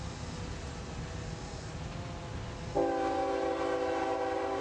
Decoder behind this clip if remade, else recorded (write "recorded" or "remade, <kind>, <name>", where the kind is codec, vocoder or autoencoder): recorded